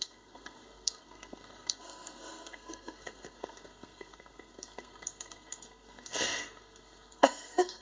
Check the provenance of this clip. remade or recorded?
remade